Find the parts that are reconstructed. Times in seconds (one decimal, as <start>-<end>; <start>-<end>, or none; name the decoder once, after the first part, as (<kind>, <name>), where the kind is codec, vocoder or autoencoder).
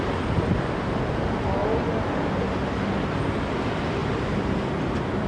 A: 4.0-4.7 (vocoder, BigVGAN v2)